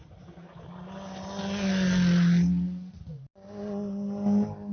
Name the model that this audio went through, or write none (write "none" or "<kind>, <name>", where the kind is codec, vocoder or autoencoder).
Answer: none